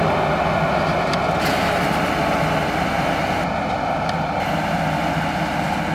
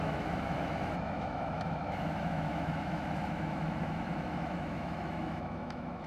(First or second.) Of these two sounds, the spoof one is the second